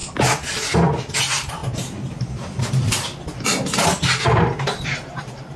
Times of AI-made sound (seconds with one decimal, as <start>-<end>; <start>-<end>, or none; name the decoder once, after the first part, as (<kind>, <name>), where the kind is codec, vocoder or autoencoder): 1.2-1.6 (vocoder, BigVGAN v2); 2.7-3.1; 4.2-5.6